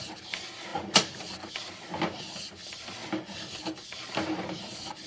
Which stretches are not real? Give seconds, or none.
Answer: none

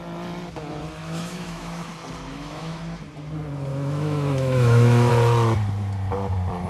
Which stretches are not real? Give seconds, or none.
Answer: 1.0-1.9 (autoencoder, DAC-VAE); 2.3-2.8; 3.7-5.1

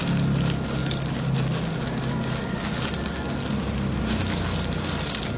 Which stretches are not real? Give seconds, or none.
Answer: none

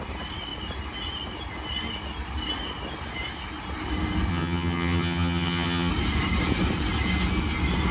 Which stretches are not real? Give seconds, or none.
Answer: 4.3-5.9 (vocoder, HiFi-GAN)

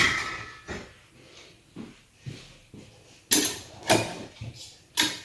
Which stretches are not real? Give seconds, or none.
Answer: none